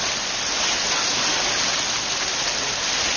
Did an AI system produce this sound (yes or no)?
no